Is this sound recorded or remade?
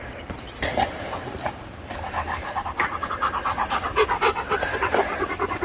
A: remade